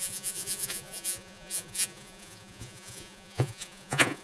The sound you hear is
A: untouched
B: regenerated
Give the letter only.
B